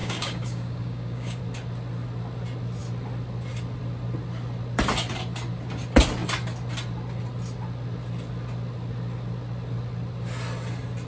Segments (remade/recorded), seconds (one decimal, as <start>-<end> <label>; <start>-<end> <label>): 0.0-1.4 remade; 1.4-11.1 recorded

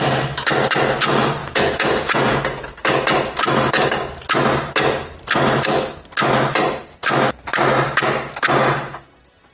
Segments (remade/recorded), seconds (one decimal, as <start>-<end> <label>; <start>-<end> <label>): 0.0-1.4 recorded; 1.4-2.4 remade; 2.4-9.5 recorded

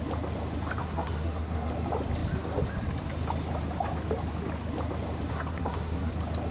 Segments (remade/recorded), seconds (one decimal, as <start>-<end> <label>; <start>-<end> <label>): 0.0-0.8 recorded; 0.8-1.7 remade; 1.7-5.3 recorded; 5.3-6.1 remade; 6.1-6.5 recorded

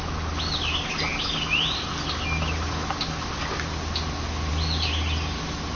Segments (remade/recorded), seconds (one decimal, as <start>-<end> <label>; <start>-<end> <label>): 0.0-5.7 recorded